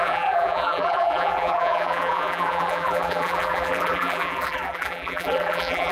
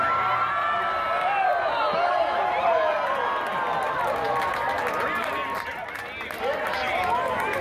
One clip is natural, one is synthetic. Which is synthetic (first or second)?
first